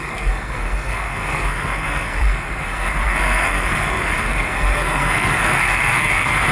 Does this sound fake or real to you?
fake